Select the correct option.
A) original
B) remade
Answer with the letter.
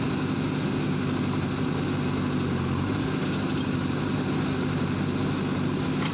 A